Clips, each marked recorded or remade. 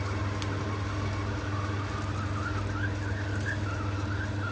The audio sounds recorded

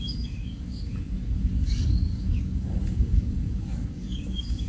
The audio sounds remade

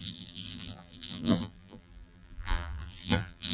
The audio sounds remade